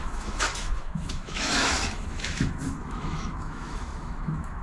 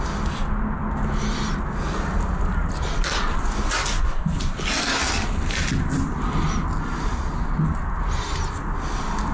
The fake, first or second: first